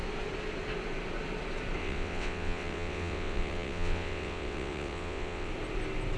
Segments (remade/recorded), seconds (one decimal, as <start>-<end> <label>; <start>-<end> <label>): 0.0-1.8 recorded; 1.8-5.5 remade; 5.5-6.2 recorded